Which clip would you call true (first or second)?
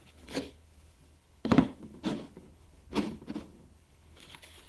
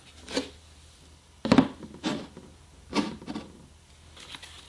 second